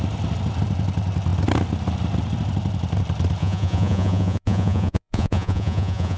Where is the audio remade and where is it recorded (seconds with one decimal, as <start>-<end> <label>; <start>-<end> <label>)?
0.0-3.4 recorded; 3.4-6.2 remade